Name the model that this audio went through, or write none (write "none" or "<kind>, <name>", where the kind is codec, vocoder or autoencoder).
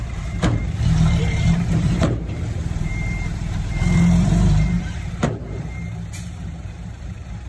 vocoder, BigVGAN v2